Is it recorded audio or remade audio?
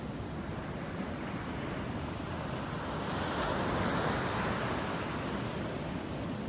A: recorded